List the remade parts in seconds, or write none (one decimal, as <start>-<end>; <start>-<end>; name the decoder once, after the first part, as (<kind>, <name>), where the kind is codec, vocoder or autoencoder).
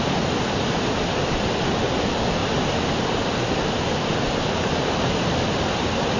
none